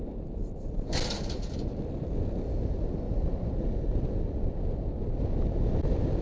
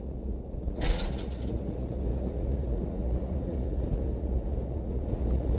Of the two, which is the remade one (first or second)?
second